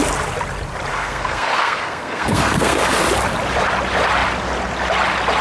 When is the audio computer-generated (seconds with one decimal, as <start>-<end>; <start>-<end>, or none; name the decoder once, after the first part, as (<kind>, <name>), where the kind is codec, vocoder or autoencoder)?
0.9-2.8 (codec, SNAC)